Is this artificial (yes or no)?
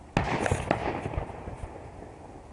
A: no